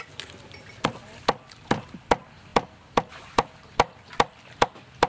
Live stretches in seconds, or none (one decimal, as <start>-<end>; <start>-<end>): 0.0-5.1